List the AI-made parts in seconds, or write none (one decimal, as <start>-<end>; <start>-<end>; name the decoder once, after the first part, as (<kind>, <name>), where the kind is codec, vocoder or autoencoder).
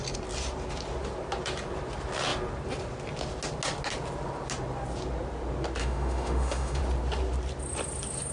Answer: 5.8-6.8 (autoencoder, DAC-VAE)